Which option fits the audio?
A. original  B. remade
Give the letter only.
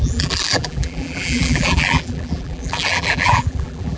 B